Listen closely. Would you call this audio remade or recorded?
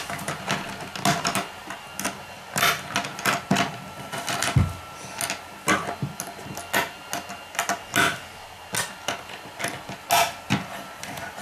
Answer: recorded